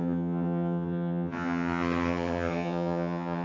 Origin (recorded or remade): remade